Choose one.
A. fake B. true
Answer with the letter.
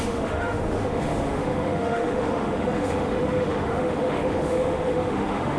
A